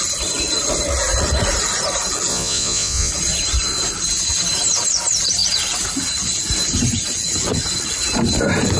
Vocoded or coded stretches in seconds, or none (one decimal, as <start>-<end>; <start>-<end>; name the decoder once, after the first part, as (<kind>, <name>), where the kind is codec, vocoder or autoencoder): 2.3-3.1 (vocoder, Vocos)